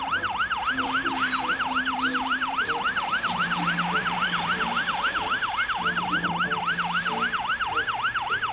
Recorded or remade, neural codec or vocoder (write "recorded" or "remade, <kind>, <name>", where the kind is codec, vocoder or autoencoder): remade, vocoder, BigVGAN v2